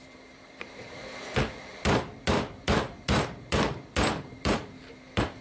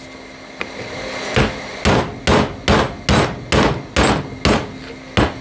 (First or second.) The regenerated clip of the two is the first